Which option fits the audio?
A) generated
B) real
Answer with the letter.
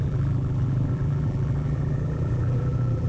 A